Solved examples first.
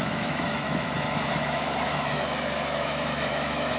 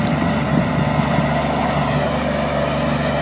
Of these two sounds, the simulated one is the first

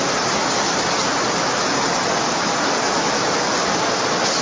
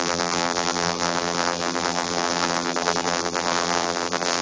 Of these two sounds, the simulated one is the second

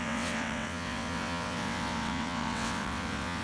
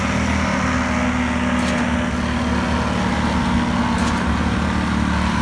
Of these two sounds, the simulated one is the first